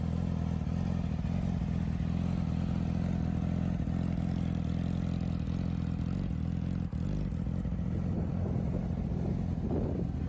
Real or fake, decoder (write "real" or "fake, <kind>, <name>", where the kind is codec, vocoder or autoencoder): real